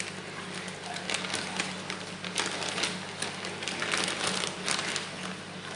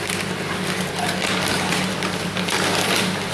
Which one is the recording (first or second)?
first